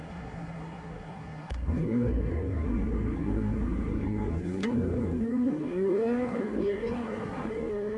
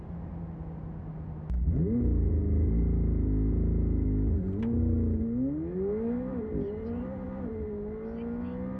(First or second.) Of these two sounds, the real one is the second